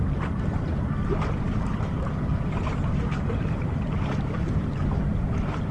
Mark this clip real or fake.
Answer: fake